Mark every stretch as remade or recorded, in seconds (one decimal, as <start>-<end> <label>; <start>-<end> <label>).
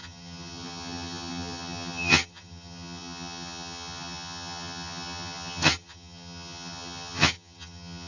0.0-8.1 remade